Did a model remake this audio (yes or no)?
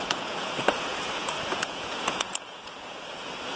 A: yes